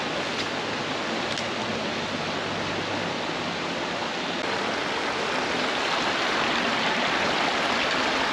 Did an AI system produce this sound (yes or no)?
no